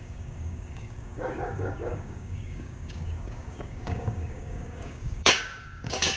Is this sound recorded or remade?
remade